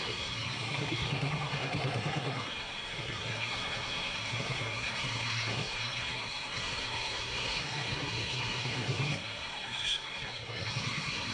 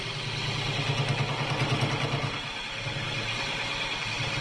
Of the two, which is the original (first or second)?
second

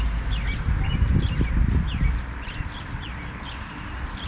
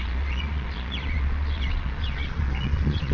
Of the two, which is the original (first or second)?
first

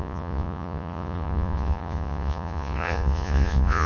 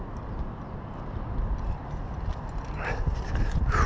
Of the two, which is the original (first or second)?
second